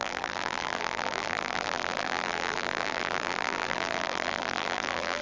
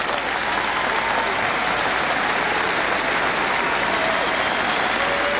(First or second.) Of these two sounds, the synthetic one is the first